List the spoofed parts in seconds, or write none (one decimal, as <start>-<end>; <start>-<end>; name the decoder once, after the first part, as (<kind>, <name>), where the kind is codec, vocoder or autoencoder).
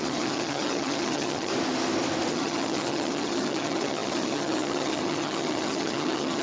0.0-1.5 (vocoder, HiFi-GAN); 2.3-6.4